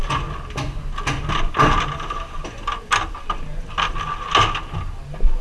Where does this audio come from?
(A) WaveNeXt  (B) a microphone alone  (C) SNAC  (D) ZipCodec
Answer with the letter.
B